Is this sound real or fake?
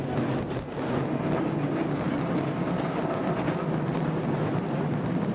real